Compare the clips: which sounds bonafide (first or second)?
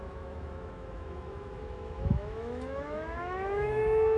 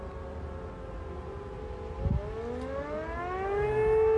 second